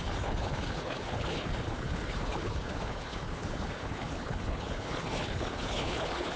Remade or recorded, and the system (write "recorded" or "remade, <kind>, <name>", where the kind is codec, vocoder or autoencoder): remade, codec, HILCodec